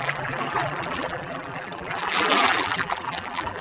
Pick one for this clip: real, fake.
fake